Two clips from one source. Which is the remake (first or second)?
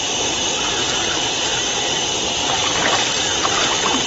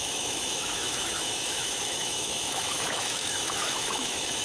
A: second